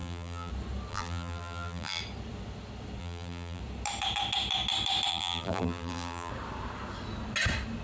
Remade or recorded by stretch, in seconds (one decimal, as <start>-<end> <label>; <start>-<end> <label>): 0.0-0.5 remade; 0.5-0.9 recorded; 0.9-2.0 remade; 2.0-3.0 recorded; 3.0-3.6 remade; 3.6-5.1 recorded; 5.1-6.3 remade; 6.3-7.8 recorded